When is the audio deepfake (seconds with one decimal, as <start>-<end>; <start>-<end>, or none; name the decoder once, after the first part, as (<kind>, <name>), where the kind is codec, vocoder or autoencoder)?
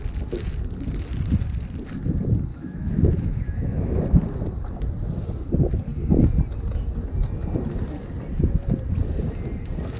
2.5-4.0 (autoencoder, DAC-VAE)